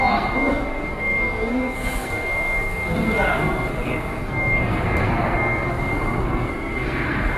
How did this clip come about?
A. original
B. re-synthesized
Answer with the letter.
B